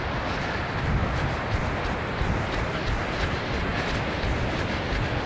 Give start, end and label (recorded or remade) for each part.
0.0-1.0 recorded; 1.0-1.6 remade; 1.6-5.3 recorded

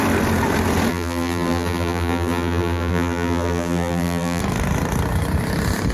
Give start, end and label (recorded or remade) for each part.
0.0-0.9 recorded; 0.9-4.4 remade; 4.4-5.9 recorded

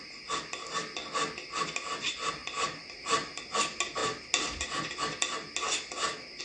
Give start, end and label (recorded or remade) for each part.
0.0-2.4 recorded; 2.4-3.4 remade; 3.4-6.4 recorded

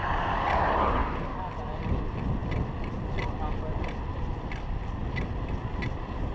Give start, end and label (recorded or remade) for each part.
0.0-6.3 recorded